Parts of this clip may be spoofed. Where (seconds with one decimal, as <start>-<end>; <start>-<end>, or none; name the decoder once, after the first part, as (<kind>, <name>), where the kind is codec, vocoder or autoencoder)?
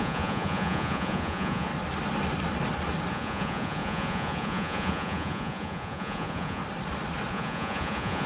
0.0-1.7 (vocoder, Vocos); 3.1-6.6; 7.3-8.3